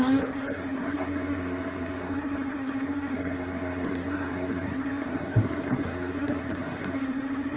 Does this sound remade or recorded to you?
remade